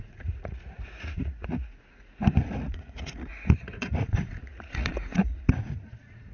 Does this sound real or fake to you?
fake